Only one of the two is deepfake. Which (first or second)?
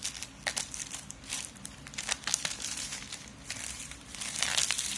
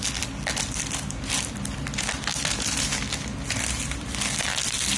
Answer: first